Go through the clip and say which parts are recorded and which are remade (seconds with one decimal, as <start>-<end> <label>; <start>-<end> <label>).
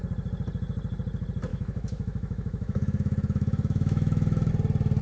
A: 0.0-1.5 recorded; 1.5-4.5 remade; 4.5-5.0 recorded